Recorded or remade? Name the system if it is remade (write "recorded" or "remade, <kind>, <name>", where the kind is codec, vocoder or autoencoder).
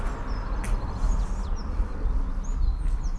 recorded